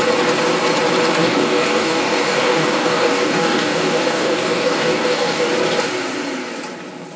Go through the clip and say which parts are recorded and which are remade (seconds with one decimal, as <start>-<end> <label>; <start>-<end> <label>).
0.0-1.2 recorded; 1.2-5.5 remade; 5.5-7.2 recorded